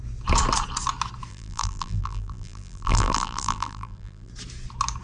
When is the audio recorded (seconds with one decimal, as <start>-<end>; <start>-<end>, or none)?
0.0-1.3; 4.3-5.0